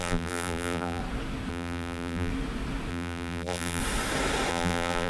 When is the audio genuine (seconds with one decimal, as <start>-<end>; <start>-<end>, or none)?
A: 1.0-1.5; 2.3-2.9; 3.8-4.5